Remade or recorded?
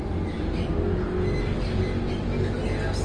recorded